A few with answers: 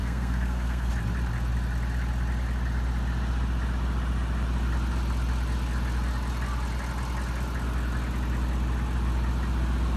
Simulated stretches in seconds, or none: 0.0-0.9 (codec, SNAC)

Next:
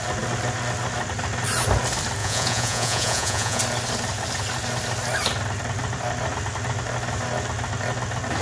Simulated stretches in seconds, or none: 2.2-3.6 (vocoder, Vocos)

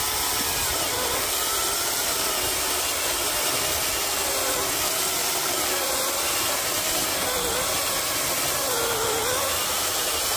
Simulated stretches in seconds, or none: 0.7-3.8 (vocoder, BigVGAN v2)

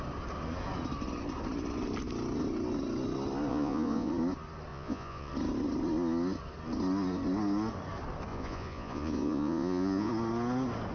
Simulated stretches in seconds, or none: 3.5-4.1 (vocoder, Vocos); 4.7-5.3; 8.3-10.1